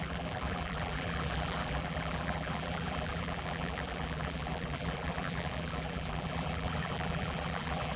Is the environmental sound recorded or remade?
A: remade